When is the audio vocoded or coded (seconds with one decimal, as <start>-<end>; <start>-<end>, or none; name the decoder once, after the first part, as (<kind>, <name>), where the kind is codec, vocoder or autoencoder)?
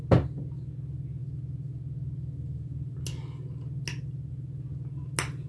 none